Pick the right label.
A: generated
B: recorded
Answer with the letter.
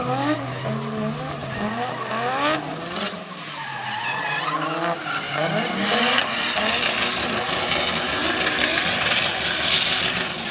B